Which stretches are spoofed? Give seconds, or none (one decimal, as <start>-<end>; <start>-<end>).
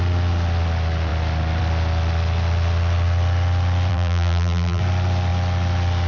3.9-4.8